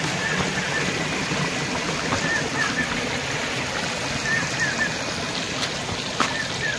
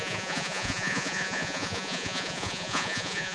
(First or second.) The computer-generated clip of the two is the second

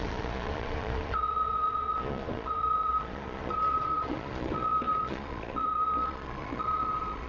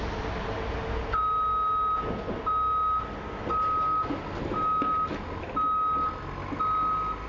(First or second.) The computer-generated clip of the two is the first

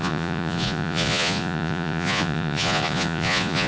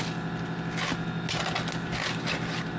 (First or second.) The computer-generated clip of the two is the first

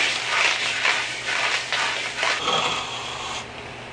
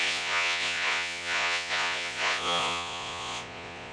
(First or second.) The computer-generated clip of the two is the second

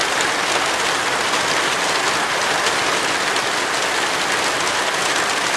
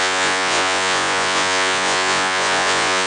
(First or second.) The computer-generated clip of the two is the second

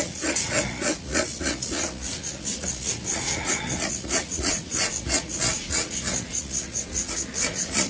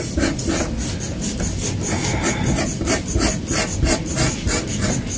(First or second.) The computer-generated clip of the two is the first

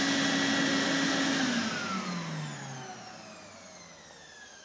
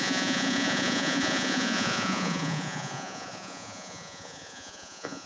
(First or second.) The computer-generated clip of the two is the second